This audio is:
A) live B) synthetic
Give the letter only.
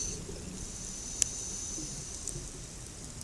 A